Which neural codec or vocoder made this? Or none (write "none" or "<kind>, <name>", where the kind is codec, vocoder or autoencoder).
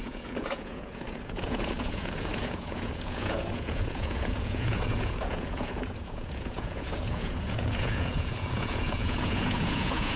vocoder, Vocos